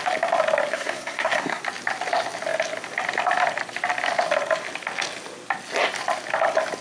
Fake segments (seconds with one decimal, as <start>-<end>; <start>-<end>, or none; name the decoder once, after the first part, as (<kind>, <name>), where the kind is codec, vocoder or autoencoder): 0.7-1.6 (codec, SNAC)